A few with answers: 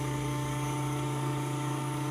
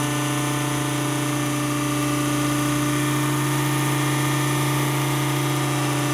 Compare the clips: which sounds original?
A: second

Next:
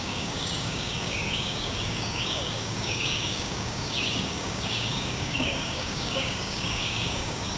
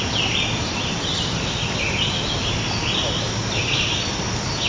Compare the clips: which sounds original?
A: second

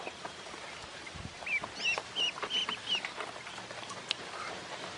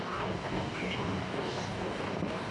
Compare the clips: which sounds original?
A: first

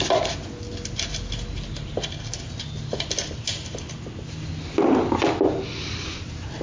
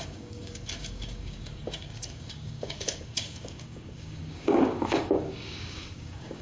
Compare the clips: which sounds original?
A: first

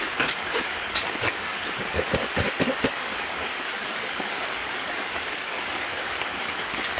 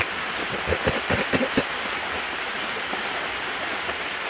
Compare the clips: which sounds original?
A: second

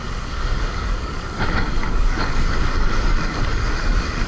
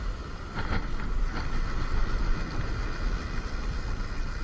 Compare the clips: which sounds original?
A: second